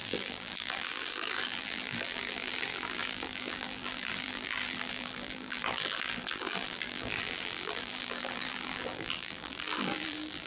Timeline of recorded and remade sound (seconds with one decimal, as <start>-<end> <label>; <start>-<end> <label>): 0.0-10.5 remade